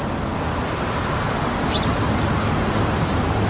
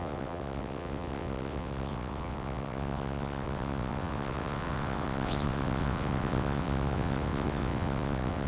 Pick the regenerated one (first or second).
second